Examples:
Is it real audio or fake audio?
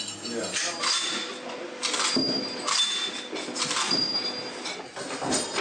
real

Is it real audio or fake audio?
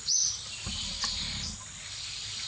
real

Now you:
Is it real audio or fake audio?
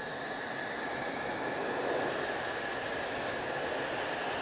real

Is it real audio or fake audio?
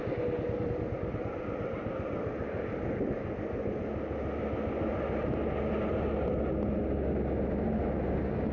real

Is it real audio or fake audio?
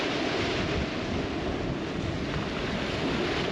real